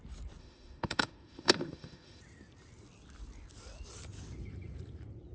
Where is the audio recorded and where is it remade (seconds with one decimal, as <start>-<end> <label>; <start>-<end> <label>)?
0.0-0.4 recorded; 0.4-2.2 remade; 2.2-5.3 recorded

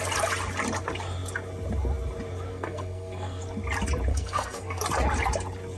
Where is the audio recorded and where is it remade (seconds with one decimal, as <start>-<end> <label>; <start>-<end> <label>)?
0.0-2.5 recorded; 2.5-3.4 remade; 3.4-4.1 recorded; 4.1-4.8 remade; 4.8-5.8 recorded

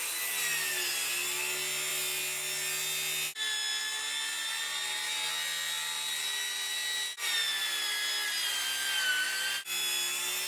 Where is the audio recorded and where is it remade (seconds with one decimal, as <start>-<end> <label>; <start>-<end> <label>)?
0.0-10.5 recorded

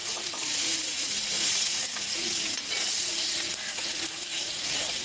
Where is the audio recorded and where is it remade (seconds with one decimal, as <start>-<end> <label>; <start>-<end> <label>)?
0.0-5.0 remade